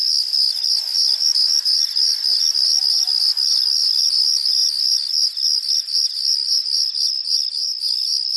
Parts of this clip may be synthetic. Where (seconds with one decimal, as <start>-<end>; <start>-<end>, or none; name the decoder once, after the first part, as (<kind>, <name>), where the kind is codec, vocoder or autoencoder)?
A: none